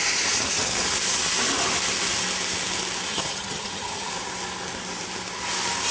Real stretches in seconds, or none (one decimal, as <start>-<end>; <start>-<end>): 0.0-3.1; 4.1-5.9